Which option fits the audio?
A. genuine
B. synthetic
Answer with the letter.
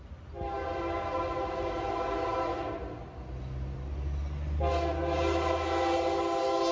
A